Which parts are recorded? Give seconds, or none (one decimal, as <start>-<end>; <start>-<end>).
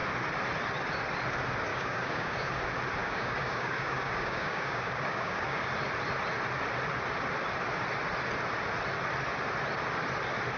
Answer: 0.0-1.7; 2.6-3.0; 5.7-10.6